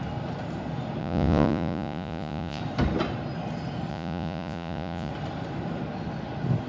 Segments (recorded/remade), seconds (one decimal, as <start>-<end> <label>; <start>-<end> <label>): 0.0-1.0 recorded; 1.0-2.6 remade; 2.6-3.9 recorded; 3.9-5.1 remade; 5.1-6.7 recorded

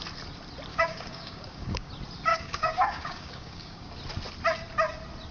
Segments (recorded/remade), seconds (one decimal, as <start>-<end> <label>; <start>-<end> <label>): 0.0-0.7 recorded; 0.7-1.9 remade; 1.9-2.3 recorded; 2.3-3.9 remade; 3.9-5.3 recorded

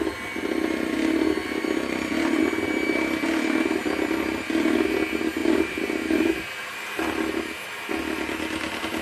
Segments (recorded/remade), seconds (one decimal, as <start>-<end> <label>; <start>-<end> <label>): 0.0-1.4 recorded; 1.4-2.4 remade; 2.4-5.4 recorded; 5.4-7.3 remade; 7.3-9.0 recorded

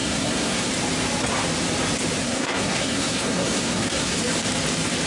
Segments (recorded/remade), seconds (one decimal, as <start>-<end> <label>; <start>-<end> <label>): 0.0-0.7 remade; 0.7-2.2 recorded; 2.2-4.2 remade; 4.2-5.1 recorded